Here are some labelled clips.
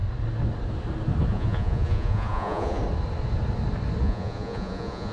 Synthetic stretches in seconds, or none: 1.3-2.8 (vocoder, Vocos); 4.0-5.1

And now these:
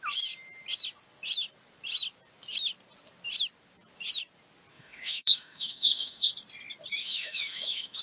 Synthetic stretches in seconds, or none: 4.7-6.3 (autoencoder, DAC-VAE); 7.0-8.0

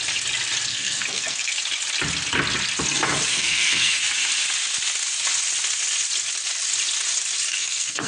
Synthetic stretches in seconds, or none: 0.7-1.6 (codec, SNAC); 3.3-4.0; 7.5-8.1

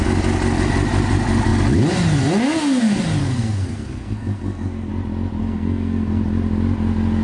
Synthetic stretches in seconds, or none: 3.2-4.9 (codec, SNAC); 5.4-6.2

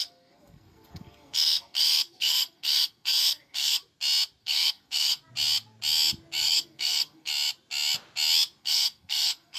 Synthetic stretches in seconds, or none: 0.0-3.8 (codec, SNAC); 4.4-5.2; 6.4-7.3; 8.6-9.6